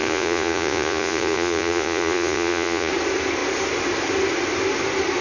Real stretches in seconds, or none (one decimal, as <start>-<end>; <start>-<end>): 2.9-5.2